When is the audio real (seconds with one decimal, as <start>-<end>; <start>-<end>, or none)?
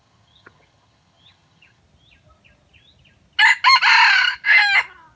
1.8-5.2